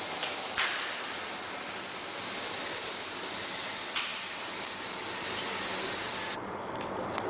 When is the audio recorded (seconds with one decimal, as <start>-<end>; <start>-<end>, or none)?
0.0-4.1; 4.8-7.3